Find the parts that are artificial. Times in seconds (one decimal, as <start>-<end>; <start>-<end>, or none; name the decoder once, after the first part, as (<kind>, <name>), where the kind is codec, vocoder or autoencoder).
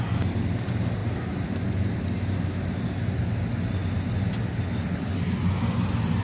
none